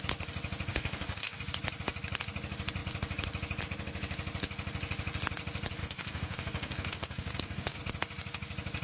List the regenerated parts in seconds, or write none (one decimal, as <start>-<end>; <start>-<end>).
0.7-1.4; 5.8-7.8